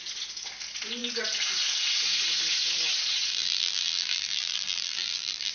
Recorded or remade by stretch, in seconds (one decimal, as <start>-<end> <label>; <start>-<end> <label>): 0.0-3.3 recorded; 3.3-5.5 remade